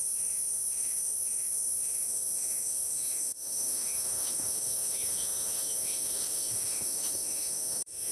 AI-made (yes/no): yes